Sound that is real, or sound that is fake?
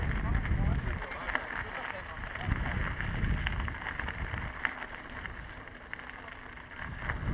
real